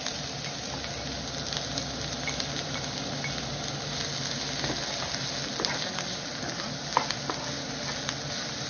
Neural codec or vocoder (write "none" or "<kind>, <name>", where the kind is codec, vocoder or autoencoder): none